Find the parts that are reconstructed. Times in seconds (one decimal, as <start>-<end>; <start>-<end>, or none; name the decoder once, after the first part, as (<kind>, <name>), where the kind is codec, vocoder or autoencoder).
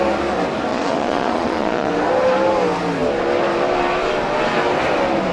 0.7-1.9 (vocoder, Vocos)